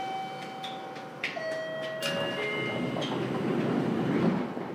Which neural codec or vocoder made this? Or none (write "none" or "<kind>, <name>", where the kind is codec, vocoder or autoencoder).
none